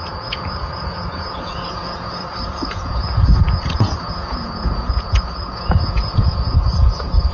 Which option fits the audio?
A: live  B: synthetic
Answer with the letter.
B